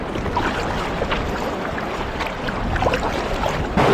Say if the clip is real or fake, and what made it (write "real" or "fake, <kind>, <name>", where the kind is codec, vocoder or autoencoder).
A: real